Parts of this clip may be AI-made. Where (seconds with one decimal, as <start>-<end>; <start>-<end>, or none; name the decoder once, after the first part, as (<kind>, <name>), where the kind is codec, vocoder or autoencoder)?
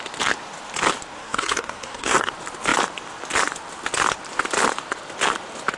1.2-2.3 (codec, SNAC)